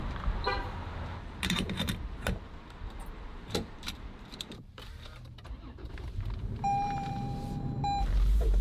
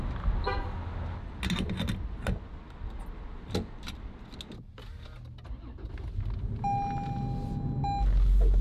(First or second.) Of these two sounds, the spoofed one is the first